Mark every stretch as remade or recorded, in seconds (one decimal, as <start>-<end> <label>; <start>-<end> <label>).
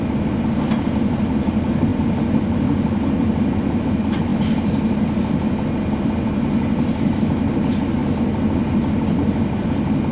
0.0-10.1 recorded